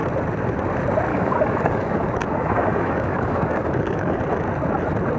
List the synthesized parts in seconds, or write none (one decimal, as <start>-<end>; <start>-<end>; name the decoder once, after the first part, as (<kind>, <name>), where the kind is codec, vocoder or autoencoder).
1.1-4.2 (codec, DAC)